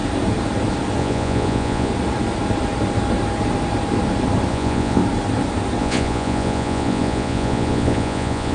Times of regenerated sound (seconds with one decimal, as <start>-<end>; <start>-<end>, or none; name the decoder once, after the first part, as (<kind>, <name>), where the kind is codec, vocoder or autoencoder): 1.0-1.9 (vocoder, Vocos); 4.5-5.0; 5.8-8.5